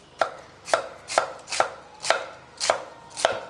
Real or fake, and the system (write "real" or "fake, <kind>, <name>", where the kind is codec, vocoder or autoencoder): real